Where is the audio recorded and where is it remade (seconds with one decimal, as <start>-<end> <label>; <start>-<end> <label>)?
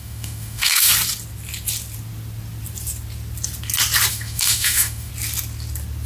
0.0-0.9 remade; 0.9-4.1 recorded; 4.1-5.1 remade; 5.1-6.1 recorded